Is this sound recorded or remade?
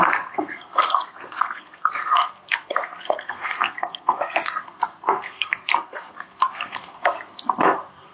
remade